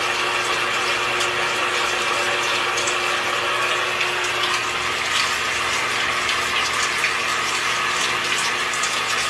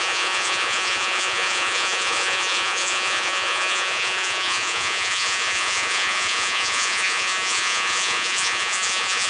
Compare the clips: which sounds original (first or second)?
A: first